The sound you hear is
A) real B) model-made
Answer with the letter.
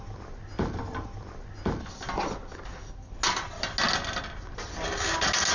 A